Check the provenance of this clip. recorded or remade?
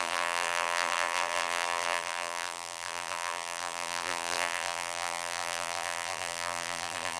remade